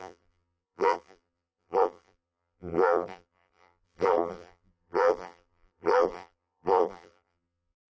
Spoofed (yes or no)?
yes